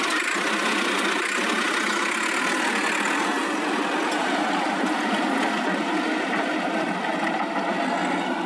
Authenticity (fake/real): real